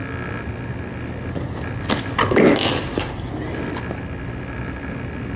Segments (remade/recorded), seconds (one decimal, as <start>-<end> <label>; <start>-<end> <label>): 0.0-5.4 recorded